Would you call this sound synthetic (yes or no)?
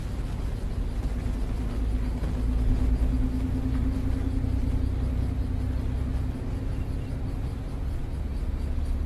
no